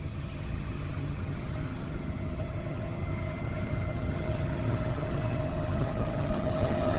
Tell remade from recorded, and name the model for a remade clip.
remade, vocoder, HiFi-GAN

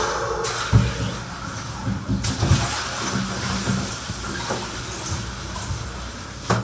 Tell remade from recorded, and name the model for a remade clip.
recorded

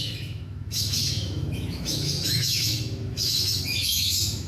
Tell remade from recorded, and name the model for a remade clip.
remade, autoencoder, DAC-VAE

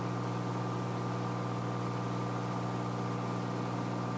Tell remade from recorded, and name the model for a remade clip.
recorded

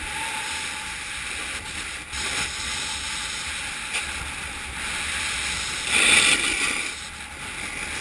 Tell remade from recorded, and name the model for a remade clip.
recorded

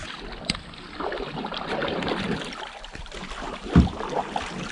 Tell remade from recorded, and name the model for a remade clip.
recorded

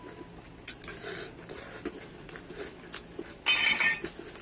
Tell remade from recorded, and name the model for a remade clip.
recorded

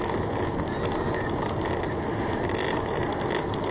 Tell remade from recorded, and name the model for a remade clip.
recorded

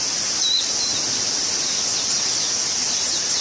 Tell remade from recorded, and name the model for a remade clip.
recorded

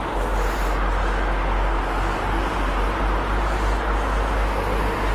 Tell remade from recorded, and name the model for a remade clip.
recorded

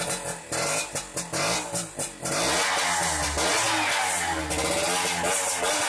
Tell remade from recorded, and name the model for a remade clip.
recorded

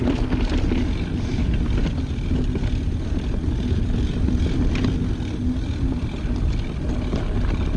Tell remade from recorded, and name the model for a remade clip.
recorded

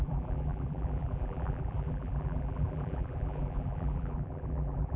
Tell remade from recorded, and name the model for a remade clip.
remade, vocoder, BigVGAN v2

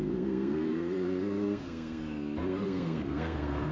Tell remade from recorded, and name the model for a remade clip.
remade, codec, SNAC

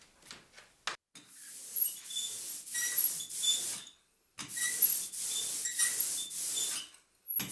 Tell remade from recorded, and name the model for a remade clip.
recorded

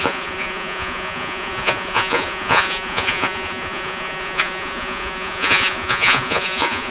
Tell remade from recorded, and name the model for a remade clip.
remade, vocoder, Vocos